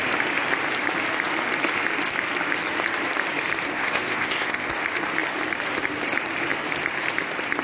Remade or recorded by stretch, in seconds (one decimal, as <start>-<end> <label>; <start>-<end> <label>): 0.0-3.7 recorded; 3.7-4.7 remade; 4.7-7.6 recorded